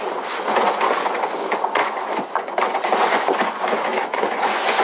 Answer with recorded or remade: remade